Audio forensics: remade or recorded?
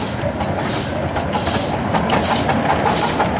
recorded